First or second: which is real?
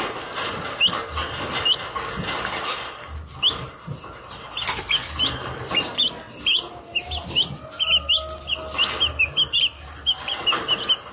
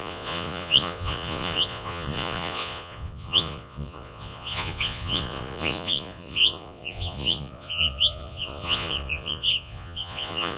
first